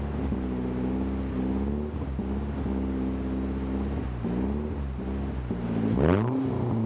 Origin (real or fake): real